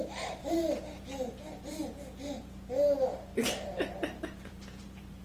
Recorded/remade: remade